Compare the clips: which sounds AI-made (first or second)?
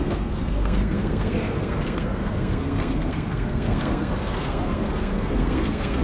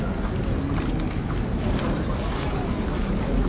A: first